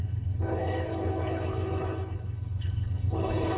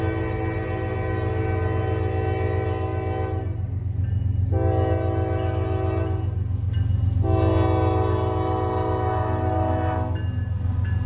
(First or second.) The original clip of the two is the second